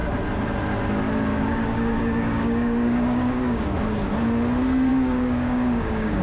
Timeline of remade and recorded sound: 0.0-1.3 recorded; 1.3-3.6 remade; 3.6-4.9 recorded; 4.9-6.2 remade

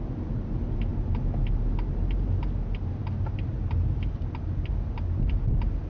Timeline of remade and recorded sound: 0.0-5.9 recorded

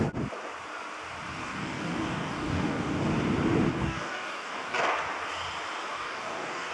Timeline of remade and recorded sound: 0.0-1.4 recorded; 1.4-3.1 remade; 3.1-3.7 recorded; 3.7-4.9 remade; 4.9-5.9 recorded; 5.9-6.7 remade

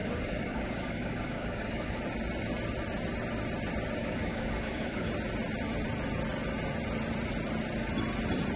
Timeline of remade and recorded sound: 0.0-2.0 remade; 2.0-4.0 recorded; 4.0-5.1 remade; 5.1-8.6 recorded

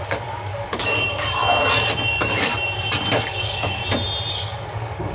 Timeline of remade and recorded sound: 0.0-1.4 remade; 1.4-2.1 recorded; 2.1-2.5 remade; 2.5-3.3 recorded; 3.3-3.8 remade; 3.8-4.3 recorded; 4.3-5.1 remade

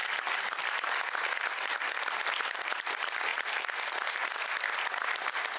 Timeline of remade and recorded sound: 0.0-5.6 recorded